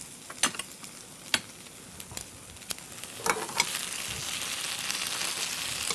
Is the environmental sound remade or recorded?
recorded